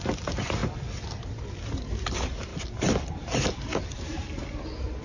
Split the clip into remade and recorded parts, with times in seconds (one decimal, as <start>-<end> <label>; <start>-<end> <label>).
0.0-0.6 remade; 0.6-1.8 recorded; 1.8-2.5 remade; 2.5-3.1 recorded; 3.1-5.0 remade